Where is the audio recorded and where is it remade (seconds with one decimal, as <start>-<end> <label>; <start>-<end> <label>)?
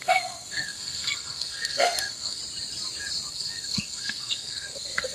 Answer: 0.0-2.4 remade; 2.4-3.3 recorded; 3.3-5.1 remade